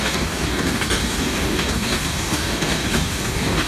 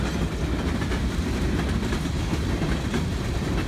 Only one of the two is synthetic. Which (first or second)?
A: first